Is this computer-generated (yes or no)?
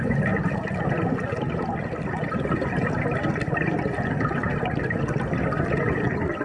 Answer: no